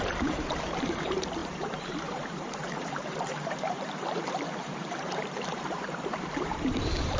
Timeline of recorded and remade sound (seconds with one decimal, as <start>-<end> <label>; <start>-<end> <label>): 0.0-7.2 remade